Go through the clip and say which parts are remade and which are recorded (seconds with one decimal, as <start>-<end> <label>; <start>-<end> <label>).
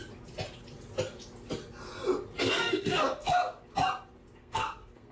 0.0-2.4 recorded; 2.4-3.6 remade; 3.6-4.4 recorded; 4.4-5.1 remade